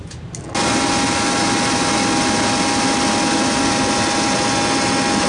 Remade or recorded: recorded